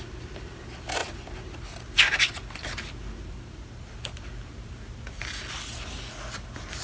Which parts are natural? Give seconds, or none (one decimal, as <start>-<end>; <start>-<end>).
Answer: 0.0-6.8